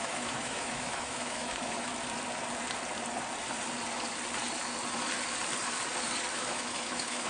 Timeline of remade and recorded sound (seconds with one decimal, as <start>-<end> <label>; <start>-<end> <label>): 0.0-1.9 remade; 1.9-6.3 recorded; 6.3-7.3 remade